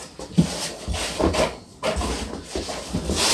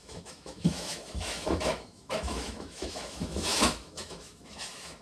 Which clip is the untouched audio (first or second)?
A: first